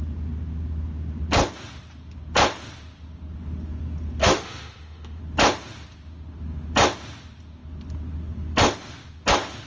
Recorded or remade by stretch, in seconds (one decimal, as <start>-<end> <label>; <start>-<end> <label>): 0.0-4.2 recorded; 4.2-5.2 remade; 5.2-9.7 recorded